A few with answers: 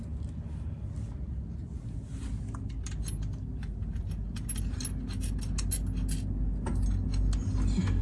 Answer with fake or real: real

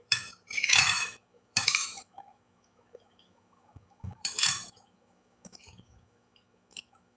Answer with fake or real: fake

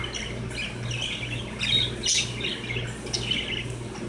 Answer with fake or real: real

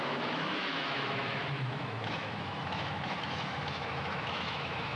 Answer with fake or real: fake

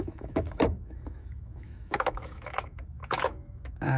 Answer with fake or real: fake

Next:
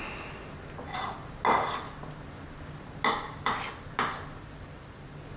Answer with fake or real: real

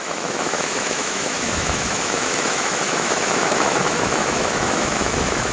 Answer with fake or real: fake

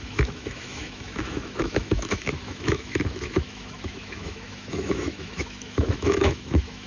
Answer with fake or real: fake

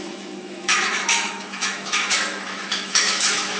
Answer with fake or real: fake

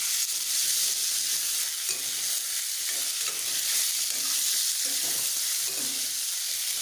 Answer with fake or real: real